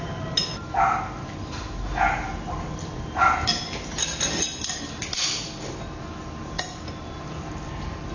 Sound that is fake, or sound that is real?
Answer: real